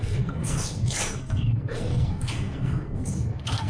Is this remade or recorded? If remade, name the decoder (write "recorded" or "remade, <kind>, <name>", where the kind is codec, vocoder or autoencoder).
remade, codec, SNAC